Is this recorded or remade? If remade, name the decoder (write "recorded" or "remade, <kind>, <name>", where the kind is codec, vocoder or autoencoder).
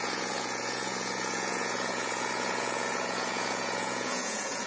remade, vocoder, Vocos